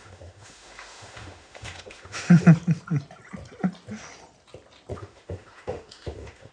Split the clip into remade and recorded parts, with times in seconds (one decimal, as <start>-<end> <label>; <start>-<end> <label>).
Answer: 0.0-2.4 remade; 2.4-4.9 recorded; 4.9-6.5 remade